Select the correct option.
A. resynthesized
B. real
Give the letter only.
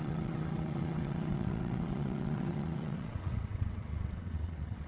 A